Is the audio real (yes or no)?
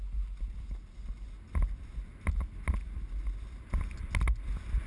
yes